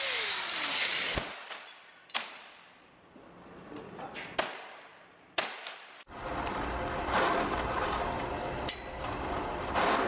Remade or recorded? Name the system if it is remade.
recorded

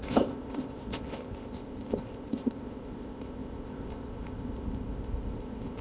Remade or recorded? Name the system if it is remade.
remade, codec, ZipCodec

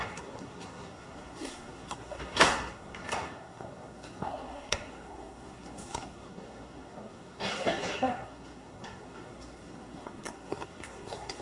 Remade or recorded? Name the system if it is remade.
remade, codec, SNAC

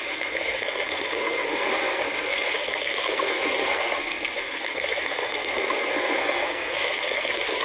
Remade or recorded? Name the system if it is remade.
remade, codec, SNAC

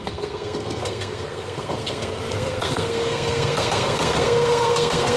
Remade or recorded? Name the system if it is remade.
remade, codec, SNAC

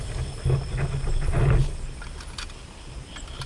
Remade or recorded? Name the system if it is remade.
recorded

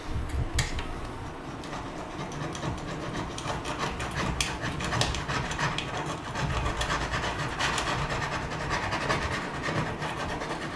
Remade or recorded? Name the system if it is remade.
recorded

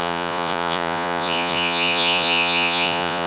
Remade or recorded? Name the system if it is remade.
remade, vocoder, Vocos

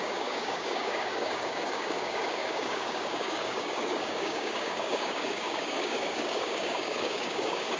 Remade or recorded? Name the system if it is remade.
remade, codec, DAC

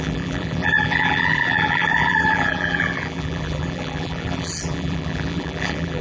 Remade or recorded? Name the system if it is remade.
remade, vocoder, BigVGAN v2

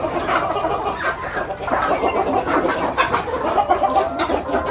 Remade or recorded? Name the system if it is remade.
recorded